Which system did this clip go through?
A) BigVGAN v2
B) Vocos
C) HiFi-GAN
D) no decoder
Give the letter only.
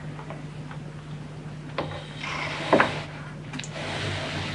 D